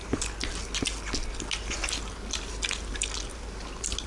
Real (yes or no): yes